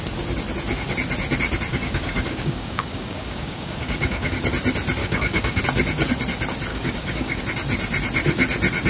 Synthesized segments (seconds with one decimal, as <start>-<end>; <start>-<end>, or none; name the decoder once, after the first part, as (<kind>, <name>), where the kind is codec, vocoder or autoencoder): 1.7-4.4 (codec, DAC); 5.0-5.6; 6.7-7.4